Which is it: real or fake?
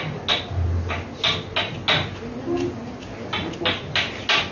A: real